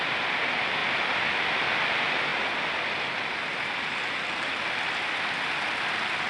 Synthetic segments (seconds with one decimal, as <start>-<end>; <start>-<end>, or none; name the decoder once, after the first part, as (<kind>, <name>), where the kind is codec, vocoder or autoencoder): none